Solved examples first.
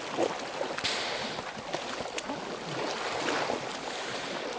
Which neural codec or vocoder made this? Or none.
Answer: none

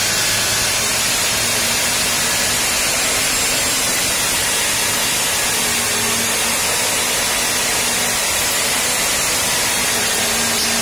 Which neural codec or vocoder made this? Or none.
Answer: none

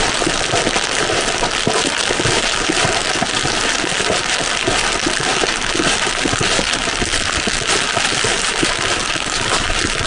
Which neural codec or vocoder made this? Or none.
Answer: none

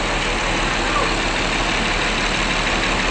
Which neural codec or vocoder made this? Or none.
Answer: none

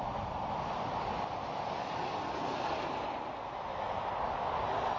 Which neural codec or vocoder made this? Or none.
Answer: none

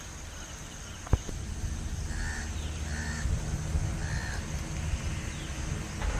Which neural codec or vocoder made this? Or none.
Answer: none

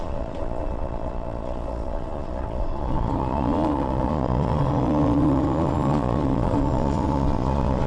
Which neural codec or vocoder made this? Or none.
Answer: vocoder, Vocos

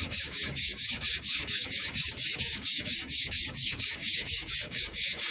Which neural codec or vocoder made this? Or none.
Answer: codec, DAC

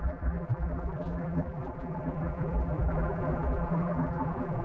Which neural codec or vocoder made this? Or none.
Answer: vocoder, BigVGAN v2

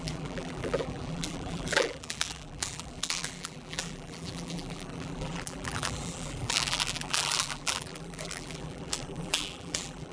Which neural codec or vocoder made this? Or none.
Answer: vocoder, BigVGAN v2